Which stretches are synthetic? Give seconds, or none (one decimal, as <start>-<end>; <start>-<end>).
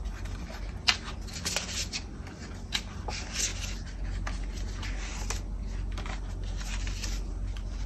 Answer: none